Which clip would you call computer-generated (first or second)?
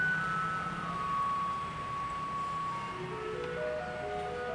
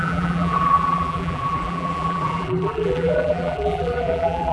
second